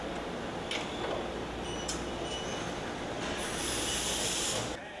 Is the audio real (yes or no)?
yes